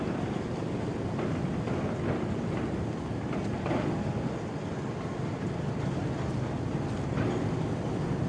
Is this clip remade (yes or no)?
no